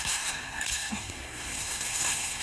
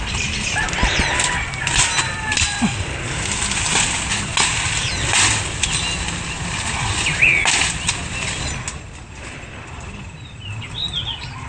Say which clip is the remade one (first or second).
first